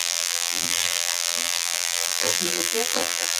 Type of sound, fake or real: fake